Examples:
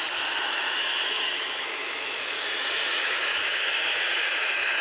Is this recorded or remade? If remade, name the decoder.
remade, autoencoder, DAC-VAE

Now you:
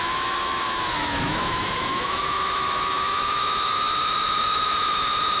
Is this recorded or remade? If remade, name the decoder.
remade, autoencoder, DAC-VAE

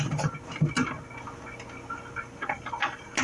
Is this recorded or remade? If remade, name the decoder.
recorded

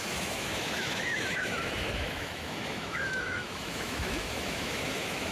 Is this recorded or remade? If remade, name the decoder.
remade, autoencoder, DAC-VAE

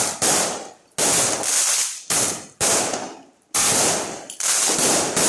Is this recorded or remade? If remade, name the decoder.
recorded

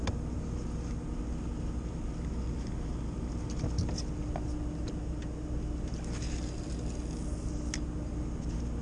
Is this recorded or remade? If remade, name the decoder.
recorded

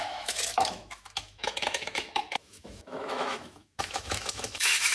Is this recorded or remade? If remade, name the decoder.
remade, autoencoder, DAC-VAE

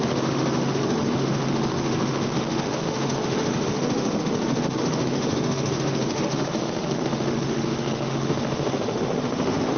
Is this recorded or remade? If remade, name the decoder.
remade, autoencoder, DAC-VAE